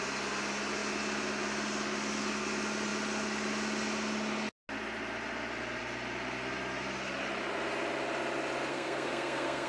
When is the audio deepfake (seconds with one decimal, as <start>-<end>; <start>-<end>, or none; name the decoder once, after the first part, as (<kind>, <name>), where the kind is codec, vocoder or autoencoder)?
8.7-9.7 (codec, SNAC)